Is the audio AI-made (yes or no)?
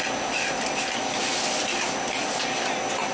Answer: no